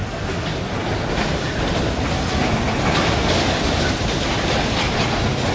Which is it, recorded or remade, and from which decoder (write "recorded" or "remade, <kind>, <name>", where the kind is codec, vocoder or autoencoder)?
recorded